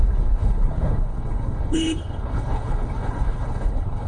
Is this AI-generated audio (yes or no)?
yes